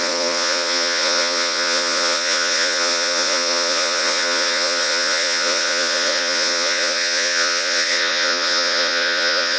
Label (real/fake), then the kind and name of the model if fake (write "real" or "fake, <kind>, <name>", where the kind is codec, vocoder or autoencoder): fake, vocoder, Vocos